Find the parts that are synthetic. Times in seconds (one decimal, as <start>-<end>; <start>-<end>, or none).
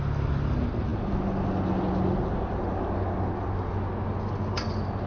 none